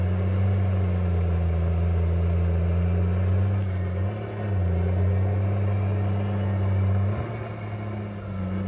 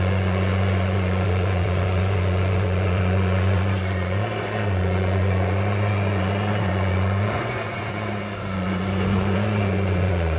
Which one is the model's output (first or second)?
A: second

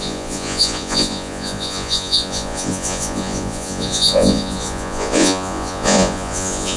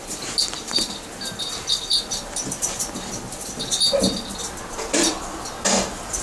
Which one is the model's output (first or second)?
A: first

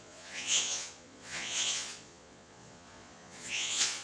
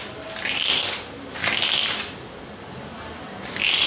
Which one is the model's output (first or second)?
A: first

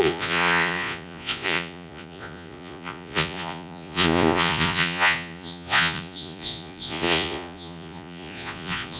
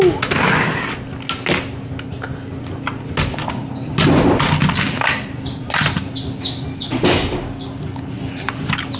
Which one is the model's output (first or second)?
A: first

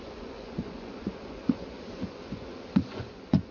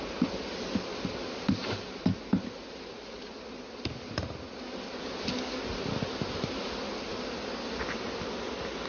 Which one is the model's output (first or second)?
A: first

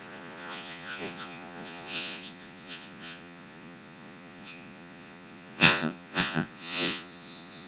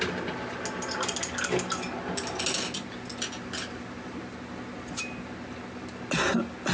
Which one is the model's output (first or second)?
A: first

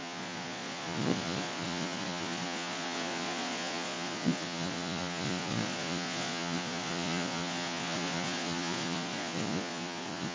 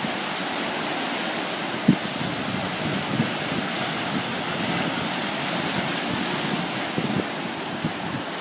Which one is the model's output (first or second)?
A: first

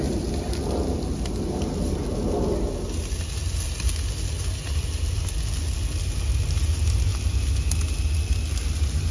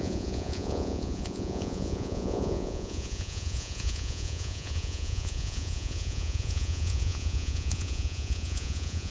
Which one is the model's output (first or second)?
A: second